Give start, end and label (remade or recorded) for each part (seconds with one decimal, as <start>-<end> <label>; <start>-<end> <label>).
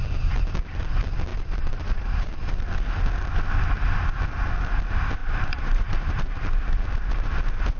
0.0-1.3 recorded; 1.3-2.5 remade; 2.5-5.2 recorded; 5.2-7.3 remade; 7.3-7.8 recorded